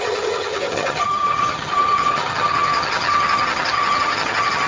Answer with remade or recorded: remade